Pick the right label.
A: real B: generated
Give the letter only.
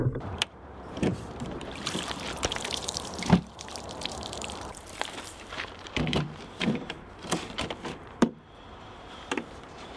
B